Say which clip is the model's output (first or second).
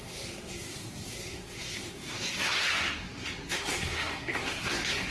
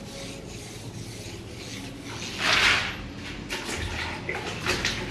first